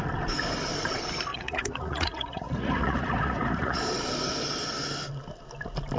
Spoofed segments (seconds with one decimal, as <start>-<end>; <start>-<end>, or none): 1.3-3.8